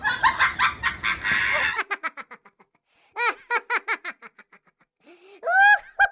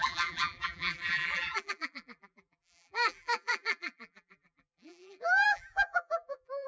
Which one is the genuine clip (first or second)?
first